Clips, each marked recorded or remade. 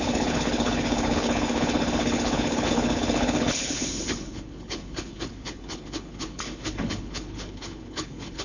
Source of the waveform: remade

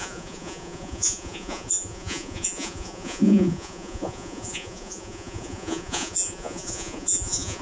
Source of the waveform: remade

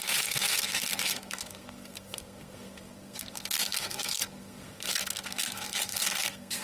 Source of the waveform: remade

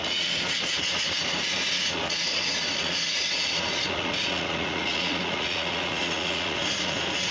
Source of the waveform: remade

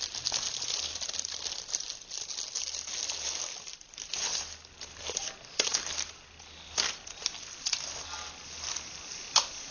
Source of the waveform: recorded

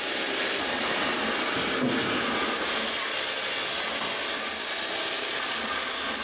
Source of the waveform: recorded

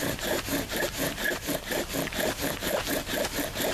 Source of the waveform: remade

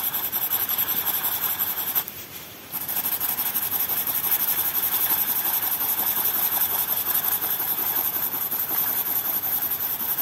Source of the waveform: remade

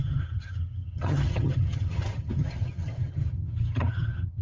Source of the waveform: remade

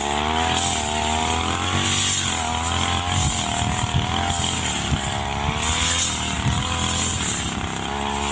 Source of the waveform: recorded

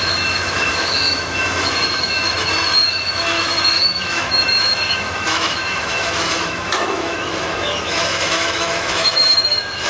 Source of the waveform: remade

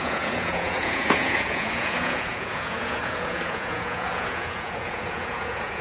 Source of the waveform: remade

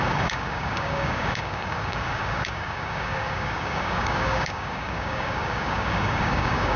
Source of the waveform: remade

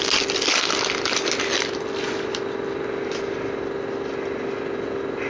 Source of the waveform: recorded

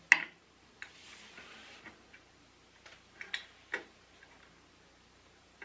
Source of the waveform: recorded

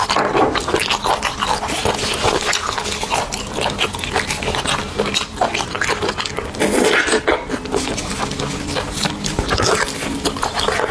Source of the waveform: recorded